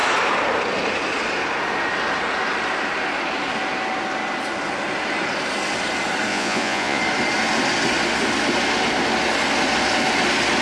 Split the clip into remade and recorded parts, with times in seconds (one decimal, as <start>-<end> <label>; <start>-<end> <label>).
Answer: 0.0-6.3 recorded; 6.3-7.0 remade; 7.0-10.6 recorded